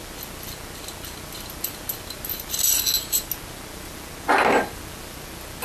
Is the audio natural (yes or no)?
yes